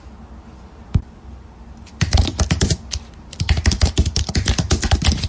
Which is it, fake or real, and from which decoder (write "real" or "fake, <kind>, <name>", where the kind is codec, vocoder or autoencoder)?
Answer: real